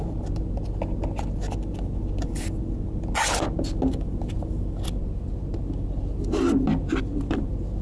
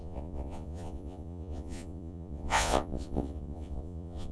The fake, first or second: second